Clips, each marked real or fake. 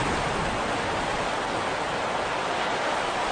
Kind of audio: real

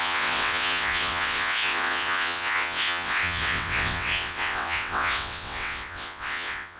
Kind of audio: fake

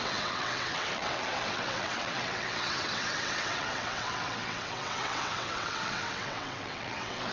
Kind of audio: fake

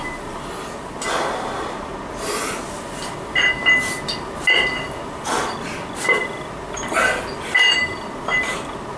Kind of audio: real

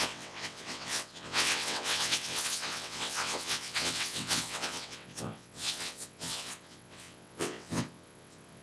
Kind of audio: fake